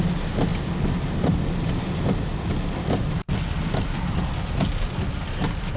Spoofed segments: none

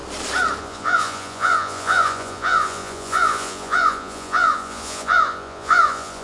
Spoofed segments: 0.6-6.2

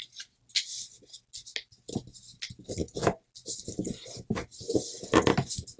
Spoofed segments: none

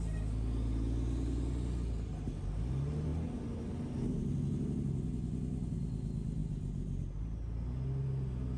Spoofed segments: none

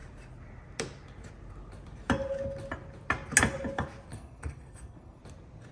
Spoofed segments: 4.1-5.2

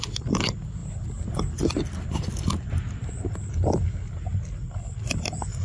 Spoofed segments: none